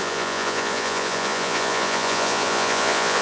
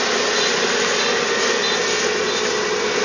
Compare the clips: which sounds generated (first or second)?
first